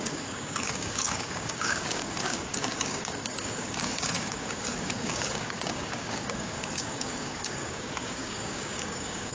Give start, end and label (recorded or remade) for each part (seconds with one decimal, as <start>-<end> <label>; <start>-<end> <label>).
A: 0.0-9.3 remade